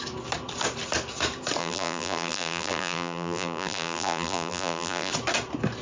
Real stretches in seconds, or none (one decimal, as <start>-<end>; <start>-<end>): 0.0-1.6; 5.1-5.8